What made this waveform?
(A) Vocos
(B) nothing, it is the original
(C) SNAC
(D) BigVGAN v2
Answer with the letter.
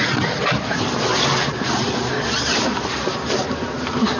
B